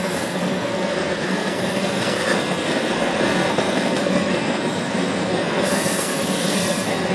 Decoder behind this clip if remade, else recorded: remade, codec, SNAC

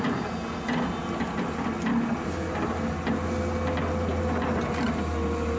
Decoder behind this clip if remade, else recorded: recorded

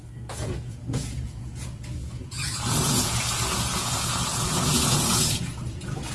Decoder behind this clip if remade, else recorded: remade, vocoder, Vocos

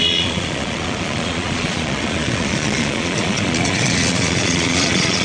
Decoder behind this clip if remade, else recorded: remade, vocoder, Vocos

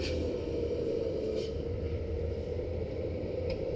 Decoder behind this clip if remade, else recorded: remade, vocoder, BigVGAN v2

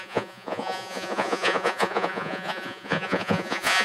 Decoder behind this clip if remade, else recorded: remade, vocoder, Vocos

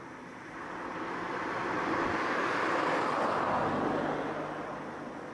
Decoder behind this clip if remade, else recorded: recorded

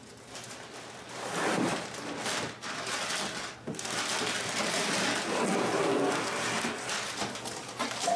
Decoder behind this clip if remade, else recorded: recorded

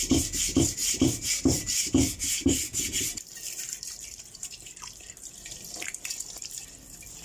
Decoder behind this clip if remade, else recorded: remade, vocoder, BigVGAN v2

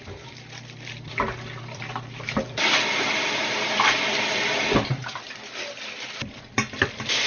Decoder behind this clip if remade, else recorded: remade, vocoder, BigVGAN v2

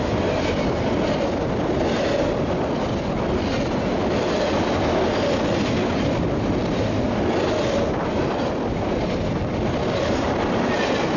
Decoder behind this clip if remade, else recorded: recorded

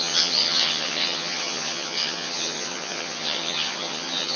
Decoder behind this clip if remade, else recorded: remade, vocoder, HiFi-GAN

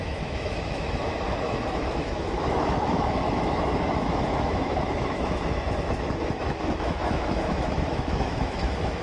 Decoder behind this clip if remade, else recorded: remade, autoencoder, DAC-VAE